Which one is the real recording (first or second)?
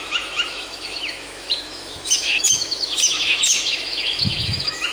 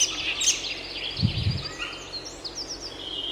second